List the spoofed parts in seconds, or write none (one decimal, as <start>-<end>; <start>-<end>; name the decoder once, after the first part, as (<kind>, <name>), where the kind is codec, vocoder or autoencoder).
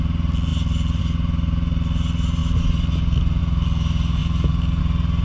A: none